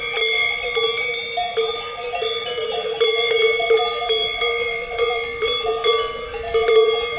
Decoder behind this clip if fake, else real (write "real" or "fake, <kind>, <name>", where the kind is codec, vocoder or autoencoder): fake, vocoder, BigVGAN v2